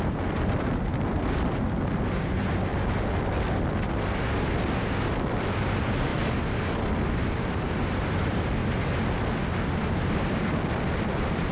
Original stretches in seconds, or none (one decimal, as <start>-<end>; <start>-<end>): 2.7-5.3; 6.1-6.8; 8.6-9.7